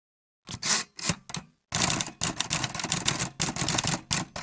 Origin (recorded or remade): recorded